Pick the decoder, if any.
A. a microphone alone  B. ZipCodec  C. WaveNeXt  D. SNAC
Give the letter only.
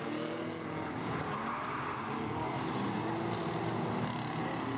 A